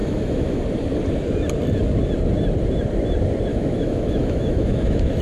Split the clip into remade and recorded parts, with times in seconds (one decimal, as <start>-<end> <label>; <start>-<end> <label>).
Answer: 0.0-0.6 remade; 0.6-3.5 recorded; 3.5-5.2 remade